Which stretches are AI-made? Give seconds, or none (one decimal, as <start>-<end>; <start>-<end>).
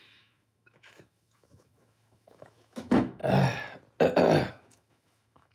0.0-3.2; 4.5-5.5